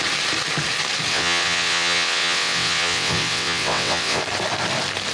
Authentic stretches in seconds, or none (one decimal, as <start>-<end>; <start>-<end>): 0.0-1.1; 4.2-5.1